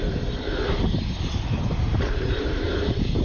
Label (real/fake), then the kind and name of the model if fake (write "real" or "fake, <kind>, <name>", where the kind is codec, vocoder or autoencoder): fake, vocoder, BigVGAN v2